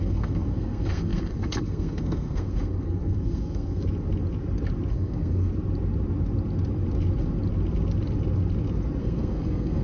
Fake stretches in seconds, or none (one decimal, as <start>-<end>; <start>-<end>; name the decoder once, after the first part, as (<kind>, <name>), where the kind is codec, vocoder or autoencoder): 0.0-3.8 (codec, SNAC); 4.9-5.5; 9.0-9.8